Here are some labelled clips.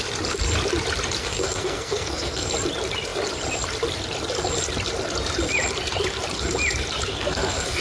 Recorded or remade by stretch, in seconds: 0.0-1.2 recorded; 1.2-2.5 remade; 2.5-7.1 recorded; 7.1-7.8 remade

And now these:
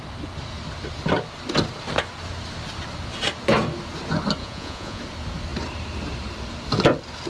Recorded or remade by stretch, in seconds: 0.0-4.4 recorded; 4.4-5.0 remade; 5.0-7.3 recorded

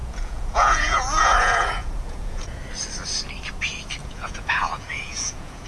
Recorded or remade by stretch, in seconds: 0.0-2.6 remade; 2.6-4.0 recorded; 4.0-5.7 remade

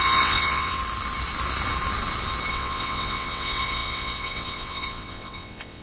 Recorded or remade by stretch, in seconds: 0.0-0.8 remade; 0.8-2.5 recorded; 2.5-5.8 remade

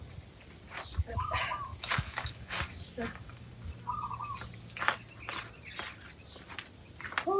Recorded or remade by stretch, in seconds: 0.0-1.7 recorded; 1.7-3.5 remade; 3.5-7.4 recorded